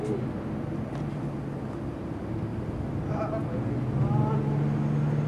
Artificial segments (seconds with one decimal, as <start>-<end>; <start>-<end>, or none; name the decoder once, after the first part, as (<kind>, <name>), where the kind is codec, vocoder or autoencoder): none